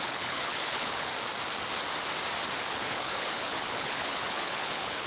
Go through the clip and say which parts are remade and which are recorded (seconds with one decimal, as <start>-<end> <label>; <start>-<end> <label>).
0.0-1.1 remade; 1.1-2.7 recorded; 2.7-5.1 remade